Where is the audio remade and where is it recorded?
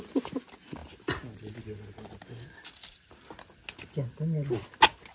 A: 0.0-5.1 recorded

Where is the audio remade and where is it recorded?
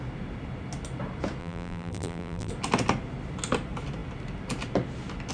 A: 0.0-1.4 recorded; 1.4-2.5 remade; 2.5-5.3 recorded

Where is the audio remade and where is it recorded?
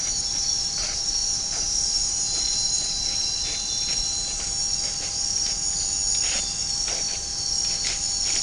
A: 0.0-4.6 remade; 4.6-6.6 recorded; 6.6-7.3 remade; 7.3-8.4 recorded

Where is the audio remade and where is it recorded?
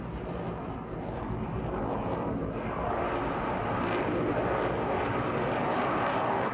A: 0.0-6.5 recorded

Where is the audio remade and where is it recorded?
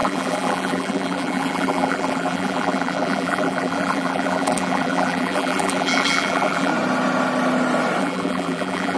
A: 0.0-6.7 remade; 6.7-8.0 recorded; 8.0-9.0 remade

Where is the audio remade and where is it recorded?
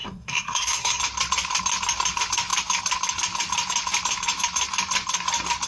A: 0.0-1.0 remade; 1.0-5.7 recorded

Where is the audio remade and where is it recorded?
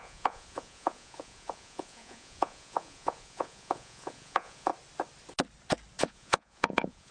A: 0.0-4.7 remade; 4.7-6.0 recorded; 6.0-7.1 remade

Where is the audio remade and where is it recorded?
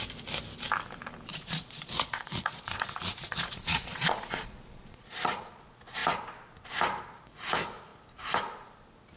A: 0.0-1.3 recorded; 1.3-5.6 remade; 5.6-9.2 recorded